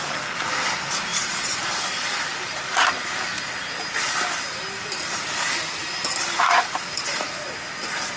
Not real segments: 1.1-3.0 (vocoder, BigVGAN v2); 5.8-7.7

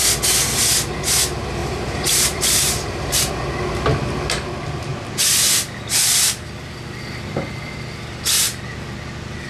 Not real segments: 1.6-3.3 (vocoder, BigVGAN v2)